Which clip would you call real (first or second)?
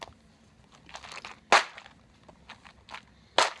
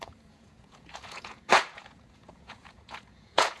first